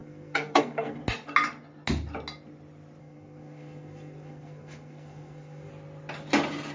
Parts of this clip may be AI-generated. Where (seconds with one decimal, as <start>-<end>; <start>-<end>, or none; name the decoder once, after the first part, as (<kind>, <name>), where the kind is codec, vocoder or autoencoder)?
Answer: 0.0-1.0 (codec, SNAC); 3.0-5.7